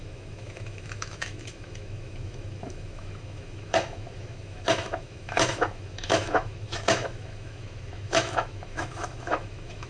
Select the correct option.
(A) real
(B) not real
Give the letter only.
B